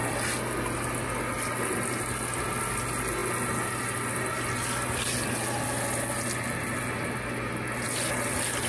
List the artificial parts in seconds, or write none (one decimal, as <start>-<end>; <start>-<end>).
none